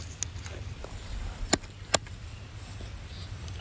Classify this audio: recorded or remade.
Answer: recorded